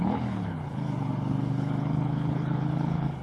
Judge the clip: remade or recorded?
remade